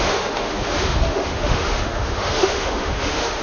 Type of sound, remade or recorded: remade